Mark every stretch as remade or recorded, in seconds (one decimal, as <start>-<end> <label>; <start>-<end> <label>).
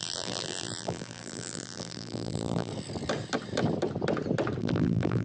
0.0-2.7 remade; 2.7-4.6 recorded; 4.6-5.2 remade